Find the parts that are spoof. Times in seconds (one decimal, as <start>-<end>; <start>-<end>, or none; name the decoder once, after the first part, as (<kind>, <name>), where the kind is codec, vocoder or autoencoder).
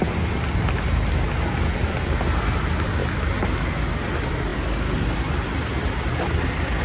none